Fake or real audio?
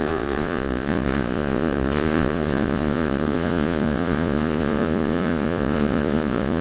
fake